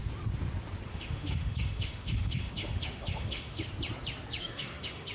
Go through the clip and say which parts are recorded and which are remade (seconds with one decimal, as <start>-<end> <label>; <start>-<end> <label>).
0.0-0.9 recorded; 0.9-3.6 remade; 3.6-4.4 recorded; 4.4-5.1 remade